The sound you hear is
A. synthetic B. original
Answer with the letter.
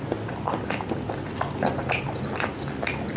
B